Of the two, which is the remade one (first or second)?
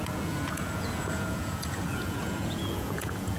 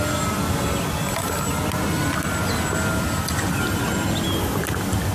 first